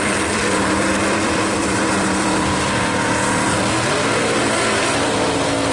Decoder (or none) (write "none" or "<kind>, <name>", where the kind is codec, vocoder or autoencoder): vocoder, BigVGAN v2